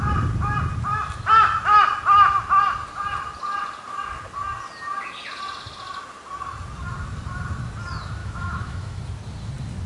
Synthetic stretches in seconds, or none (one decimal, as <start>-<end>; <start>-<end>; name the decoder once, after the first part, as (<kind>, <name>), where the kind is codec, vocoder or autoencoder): 8.2-9.0 (autoencoder, DAC-VAE)